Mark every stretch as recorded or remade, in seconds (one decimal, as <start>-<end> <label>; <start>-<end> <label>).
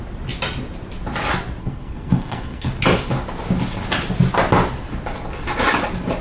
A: 0.0-1.6 recorded; 1.6-2.7 remade; 2.7-6.2 recorded